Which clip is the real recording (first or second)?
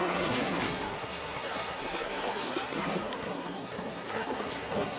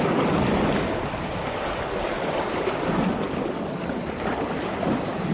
second